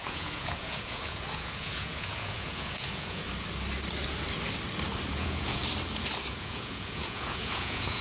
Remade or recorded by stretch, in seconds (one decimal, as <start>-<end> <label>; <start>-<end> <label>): 0.0-3.2 remade; 3.2-5.1 recorded; 5.1-5.6 remade; 5.6-6.3 recorded; 6.3-8.0 remade